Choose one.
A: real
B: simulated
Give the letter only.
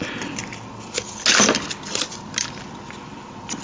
A